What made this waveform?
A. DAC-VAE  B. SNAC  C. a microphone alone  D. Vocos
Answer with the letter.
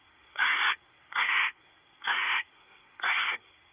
B